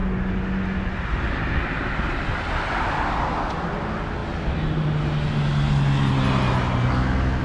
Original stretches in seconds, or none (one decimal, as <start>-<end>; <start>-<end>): 0.0-7.4